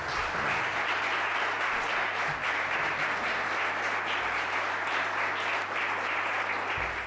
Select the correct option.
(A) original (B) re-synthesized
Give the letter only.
A